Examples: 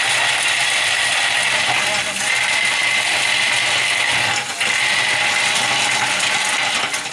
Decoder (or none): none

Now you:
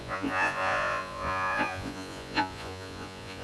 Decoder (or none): vocoder, Vocos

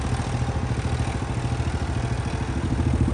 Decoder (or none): none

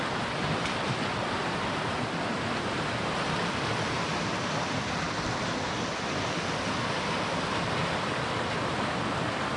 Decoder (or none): none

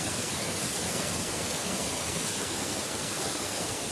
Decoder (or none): codec, SNAC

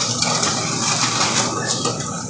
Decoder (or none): none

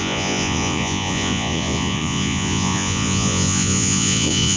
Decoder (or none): vocoder, Vocos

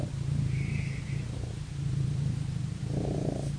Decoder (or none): vocoder, BigVGAN v2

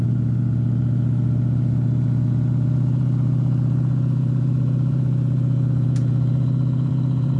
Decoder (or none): vocoder, BigVGAN v2